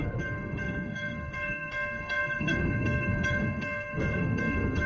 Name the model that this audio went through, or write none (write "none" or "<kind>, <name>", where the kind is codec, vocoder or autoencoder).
codec, SNAC